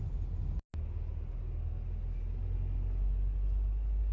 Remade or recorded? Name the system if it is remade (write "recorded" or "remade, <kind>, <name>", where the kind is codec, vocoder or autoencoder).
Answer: recorded